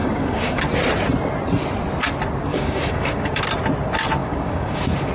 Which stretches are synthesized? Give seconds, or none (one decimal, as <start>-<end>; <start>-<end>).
0.0-0.6; 2.5-3.4; 4.2-5.1

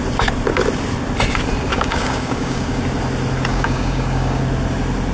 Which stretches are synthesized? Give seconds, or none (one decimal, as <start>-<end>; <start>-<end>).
1.7-2.8; 3.5-4.4

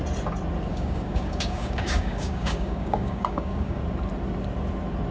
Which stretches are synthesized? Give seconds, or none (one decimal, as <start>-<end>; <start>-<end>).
0.7-3.8